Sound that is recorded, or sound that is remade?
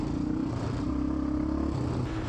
remade